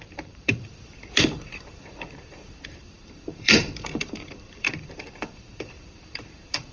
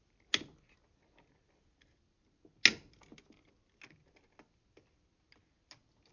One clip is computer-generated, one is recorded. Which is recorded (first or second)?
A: second